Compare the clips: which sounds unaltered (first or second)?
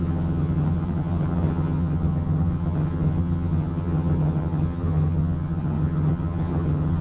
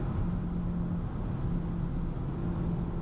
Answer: second